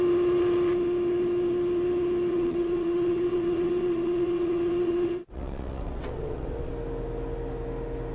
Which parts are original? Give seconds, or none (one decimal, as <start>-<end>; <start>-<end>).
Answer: 0.0-2.3; 6.7-8.1